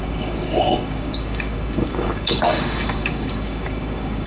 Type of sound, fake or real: fake